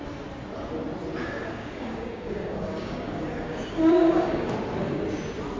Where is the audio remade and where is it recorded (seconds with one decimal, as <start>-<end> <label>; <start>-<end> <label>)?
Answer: 0.0-1.2 recorded; 1.2-4.5 remade; 4.5-5.6 recorded

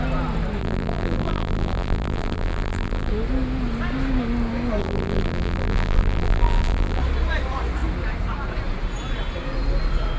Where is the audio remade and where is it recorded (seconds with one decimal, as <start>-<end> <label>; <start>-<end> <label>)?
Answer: 0.0-0.6 recorded; 0.6-3.1 remade; 3.1-4.8 recorded; 4.8-7.0 remade; 7.0-10.2 recorded

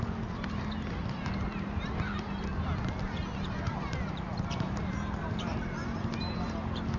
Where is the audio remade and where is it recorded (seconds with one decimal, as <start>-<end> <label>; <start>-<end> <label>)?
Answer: 0.0-2.5 remade; 2.5-3.9 recorded; 3.9-7.0 remade

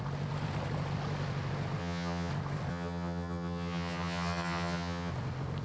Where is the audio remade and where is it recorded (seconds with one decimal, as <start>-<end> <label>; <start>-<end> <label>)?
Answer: 0.0-1.8 recorded; 1.8-2.3 remade; 2.3-2.7 recorded; 2.7-5.1 remade; 5.1-5.6 recorded

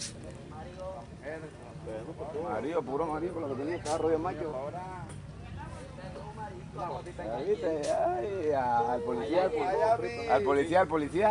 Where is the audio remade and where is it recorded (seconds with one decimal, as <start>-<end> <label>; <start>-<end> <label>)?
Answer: 0.0-11.3 recorded

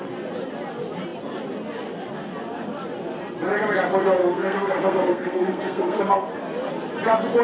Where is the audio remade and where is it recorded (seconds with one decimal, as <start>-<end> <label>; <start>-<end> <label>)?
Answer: 0.0-4.2 recorded; 4.2-6.0 remade; 6.0-7.4 recorded